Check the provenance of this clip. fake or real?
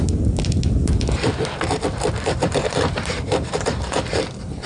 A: fake